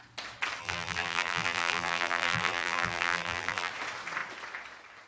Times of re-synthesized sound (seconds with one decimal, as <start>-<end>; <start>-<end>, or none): 0.6-3.7